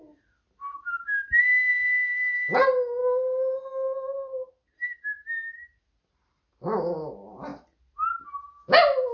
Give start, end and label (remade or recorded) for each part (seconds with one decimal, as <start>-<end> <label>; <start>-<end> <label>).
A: 0.0-9.1 recorded